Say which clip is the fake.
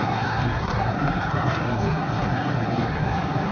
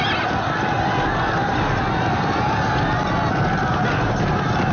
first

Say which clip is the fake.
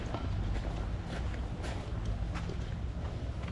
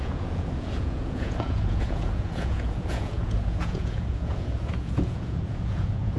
second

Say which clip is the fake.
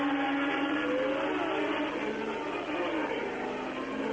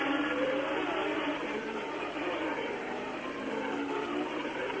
second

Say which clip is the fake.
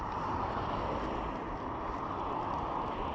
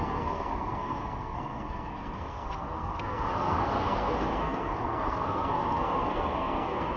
second